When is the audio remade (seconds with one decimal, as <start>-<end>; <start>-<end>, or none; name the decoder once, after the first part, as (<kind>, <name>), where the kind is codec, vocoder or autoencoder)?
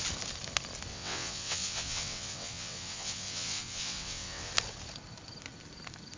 0.9-4.5 (vocoder, WaveNeXt)